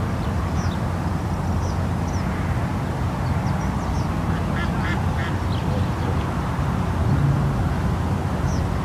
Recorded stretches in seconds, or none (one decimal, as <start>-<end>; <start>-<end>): 0.0-8.8